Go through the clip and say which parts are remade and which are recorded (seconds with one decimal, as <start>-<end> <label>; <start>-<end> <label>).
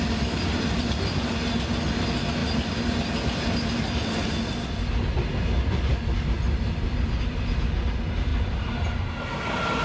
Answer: 0.0-9.8 recorded